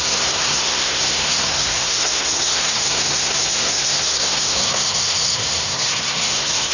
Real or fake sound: fake